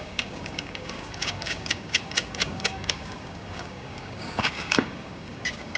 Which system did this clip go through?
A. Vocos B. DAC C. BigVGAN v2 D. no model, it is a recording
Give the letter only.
B